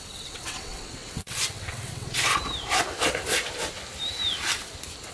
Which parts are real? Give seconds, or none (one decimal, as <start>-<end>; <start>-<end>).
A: 2.3-5.1